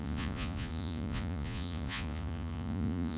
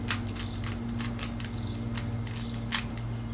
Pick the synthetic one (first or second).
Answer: first